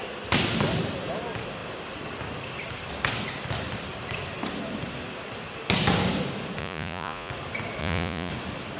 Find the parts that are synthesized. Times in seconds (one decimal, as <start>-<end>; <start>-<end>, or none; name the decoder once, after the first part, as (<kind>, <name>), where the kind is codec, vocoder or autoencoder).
6.6-7.3 (vocoder, Vocos); 7.8-8.3